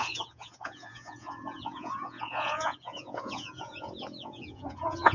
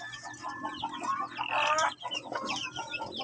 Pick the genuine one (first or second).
second